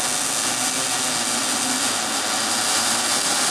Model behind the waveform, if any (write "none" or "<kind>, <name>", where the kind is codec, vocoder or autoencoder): none